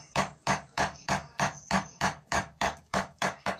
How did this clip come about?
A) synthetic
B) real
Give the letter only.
A